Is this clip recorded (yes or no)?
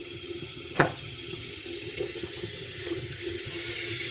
no